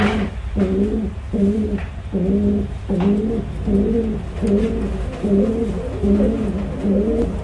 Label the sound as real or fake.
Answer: real